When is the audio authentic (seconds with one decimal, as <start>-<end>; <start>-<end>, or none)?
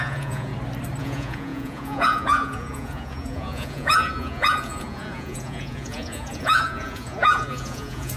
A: 0.5-1.0